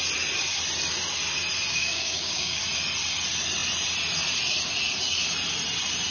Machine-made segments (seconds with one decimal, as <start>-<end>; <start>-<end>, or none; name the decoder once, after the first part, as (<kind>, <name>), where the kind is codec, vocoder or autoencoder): 1.7-2.6 (codec, DAC)